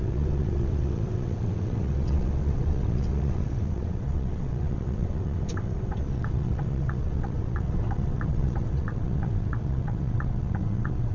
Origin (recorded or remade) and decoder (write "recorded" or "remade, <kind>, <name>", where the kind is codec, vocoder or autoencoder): remade, vocoder, WaveNeXt